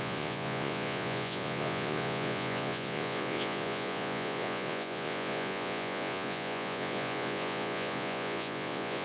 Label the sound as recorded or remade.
remade